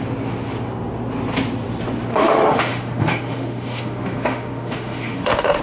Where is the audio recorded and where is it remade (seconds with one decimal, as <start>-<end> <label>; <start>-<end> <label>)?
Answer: 0.0-2.1 recorded; 2.1-5.6 remade

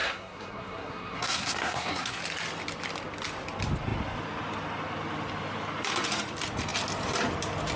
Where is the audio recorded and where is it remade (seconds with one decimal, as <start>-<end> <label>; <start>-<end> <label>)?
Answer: 0.0-2.2 remade; 2.2-7.8 recorded

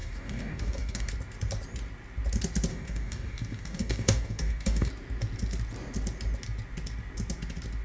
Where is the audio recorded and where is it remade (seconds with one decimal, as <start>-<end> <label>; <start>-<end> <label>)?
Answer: 0.0-1.1 remade; 1.1-2.7 recorded; 2.7-4.9 remade; 4.9-7.8 recorded

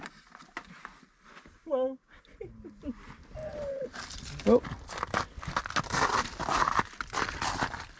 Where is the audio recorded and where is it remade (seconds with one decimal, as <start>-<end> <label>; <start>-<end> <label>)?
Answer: 0.0-1.6 recorded; 1.6-2.2 remade; 2.2-8.0 recorded